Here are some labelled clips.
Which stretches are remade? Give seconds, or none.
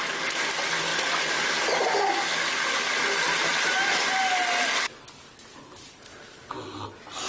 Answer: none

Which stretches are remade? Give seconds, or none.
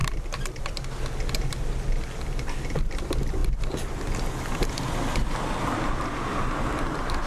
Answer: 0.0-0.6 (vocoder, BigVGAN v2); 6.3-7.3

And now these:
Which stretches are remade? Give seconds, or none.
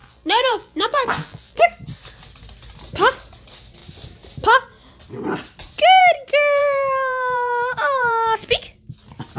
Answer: 0.0-1.6 (vocoder, BigVGAN v2); 6.6-8.6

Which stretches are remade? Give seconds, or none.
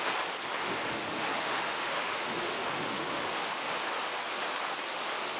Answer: 0.6-3.8 (autoencoder, DAC-VAE)